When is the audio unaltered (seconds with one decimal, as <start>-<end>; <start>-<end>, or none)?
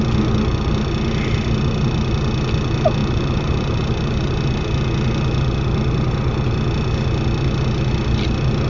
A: 0.0-3.0; 4.6-8.7